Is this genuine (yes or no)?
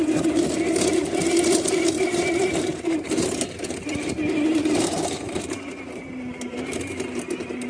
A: no